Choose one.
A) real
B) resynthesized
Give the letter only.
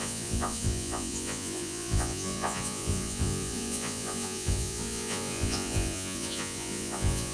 B